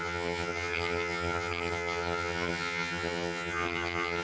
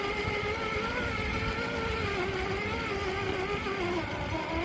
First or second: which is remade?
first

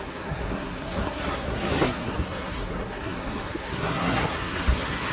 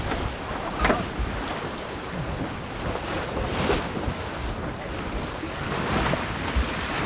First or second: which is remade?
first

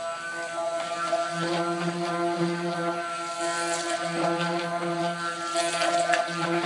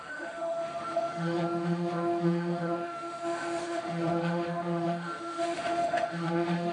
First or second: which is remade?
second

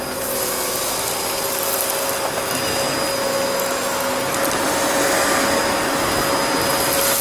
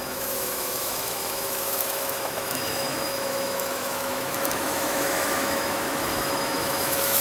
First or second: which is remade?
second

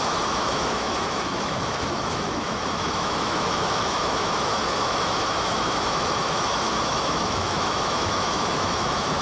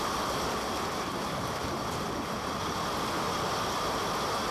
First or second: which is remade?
first